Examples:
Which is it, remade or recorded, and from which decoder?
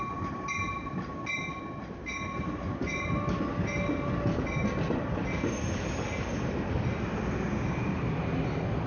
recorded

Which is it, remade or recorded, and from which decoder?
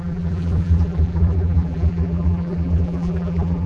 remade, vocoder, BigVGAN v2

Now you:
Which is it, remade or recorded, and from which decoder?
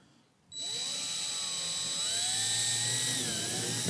recorded